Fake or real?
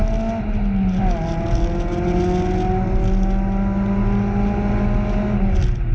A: real